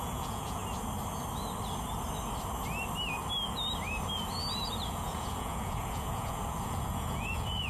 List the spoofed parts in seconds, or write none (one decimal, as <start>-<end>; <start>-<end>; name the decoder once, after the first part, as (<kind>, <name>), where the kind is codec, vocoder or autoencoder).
0.0-0.6 (vocoder, Vocos); 5.0-7.7